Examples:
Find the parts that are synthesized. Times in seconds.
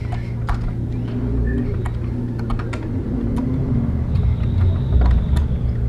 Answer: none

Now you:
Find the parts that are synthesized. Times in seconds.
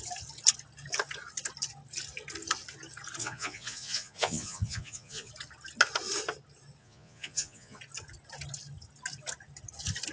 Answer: 3.2-5.3 (vocoder, Vocos); 6.8-7.8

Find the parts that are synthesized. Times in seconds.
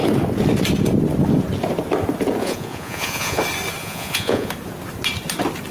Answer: 2.4-3.4 (vocoder, Vocos); 3.8-4.5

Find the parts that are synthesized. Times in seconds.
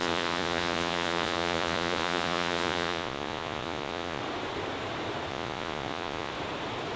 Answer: 0.0-4.2 (vocoder, Vocos); 5.3-6.3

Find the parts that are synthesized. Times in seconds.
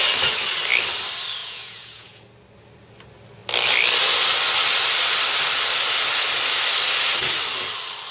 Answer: 1.4-2.2 (vocoder, Vocos)